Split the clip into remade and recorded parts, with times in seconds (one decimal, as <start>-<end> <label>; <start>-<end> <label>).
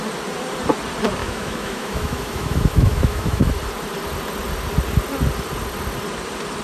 0.0-1.2 recorded; 1.2-3.5 remade; 3.5-6.6 recorded